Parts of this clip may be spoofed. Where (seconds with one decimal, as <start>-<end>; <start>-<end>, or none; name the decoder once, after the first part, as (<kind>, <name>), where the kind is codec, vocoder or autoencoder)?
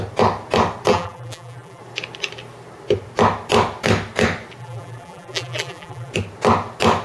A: 0.9-1.8 (vocoder, BigVGAN v2); 4.6-6.1